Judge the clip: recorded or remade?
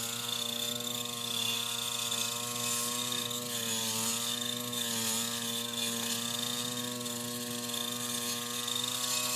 recorded